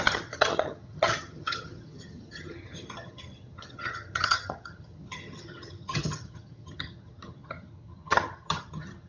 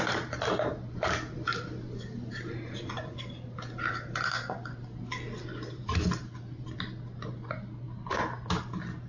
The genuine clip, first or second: second